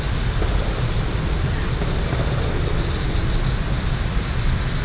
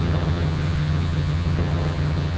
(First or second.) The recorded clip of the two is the first